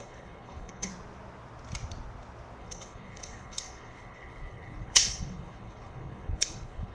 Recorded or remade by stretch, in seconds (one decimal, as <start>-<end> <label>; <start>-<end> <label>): 0.0-0.9 remade; 0.9-2.6 recorded; 2.6-6.9 remade